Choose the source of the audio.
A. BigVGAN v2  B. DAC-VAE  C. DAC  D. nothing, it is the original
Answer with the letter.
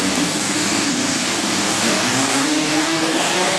C